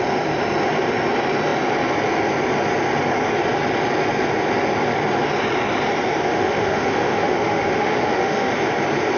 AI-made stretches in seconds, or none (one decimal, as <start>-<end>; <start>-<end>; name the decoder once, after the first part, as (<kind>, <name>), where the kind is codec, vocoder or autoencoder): 6.3-8.5 (autoencoder, DAC-VAE)